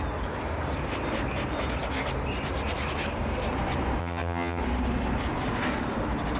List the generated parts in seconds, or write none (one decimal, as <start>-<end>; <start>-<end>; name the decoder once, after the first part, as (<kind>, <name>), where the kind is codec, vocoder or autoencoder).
4.0-4.6 (vocoder, HiFi-GAN)